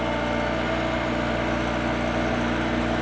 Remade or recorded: recorded